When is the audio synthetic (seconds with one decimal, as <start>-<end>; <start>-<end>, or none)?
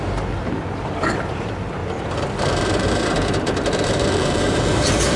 0.0-5.2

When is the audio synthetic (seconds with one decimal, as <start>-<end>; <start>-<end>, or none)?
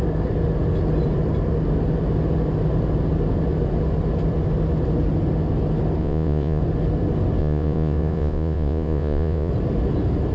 6.0-6.6; 7.4-9.5